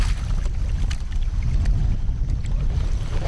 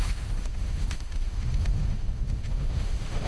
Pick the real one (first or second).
first